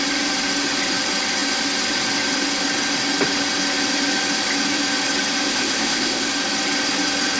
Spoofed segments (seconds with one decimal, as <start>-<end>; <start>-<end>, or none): 5.5-6.3